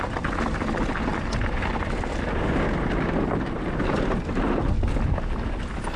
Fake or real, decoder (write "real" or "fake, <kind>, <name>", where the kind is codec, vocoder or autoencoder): real